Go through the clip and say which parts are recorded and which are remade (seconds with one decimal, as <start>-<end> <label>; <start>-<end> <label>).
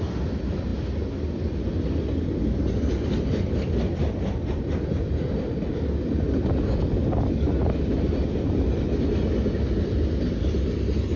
0.0-11.2 recorded